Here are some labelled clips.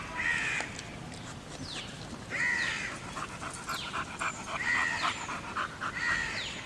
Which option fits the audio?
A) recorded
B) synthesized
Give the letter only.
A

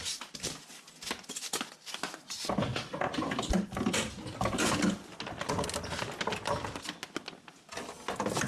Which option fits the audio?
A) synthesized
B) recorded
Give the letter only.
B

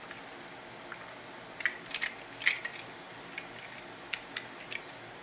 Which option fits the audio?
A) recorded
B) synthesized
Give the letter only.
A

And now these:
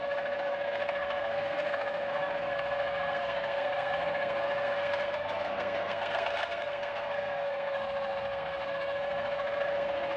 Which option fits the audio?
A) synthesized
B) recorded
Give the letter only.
A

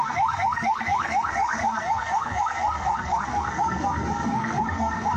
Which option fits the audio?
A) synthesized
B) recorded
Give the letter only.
A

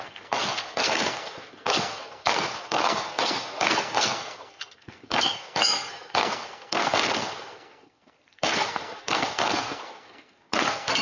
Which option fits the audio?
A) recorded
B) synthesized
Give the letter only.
B